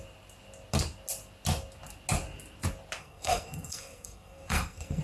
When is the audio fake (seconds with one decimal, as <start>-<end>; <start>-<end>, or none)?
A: 3.0-5.0